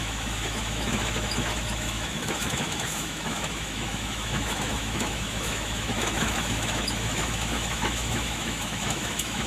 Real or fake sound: fake